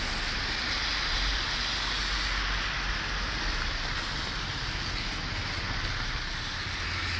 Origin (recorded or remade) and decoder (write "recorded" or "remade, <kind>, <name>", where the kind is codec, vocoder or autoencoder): recorded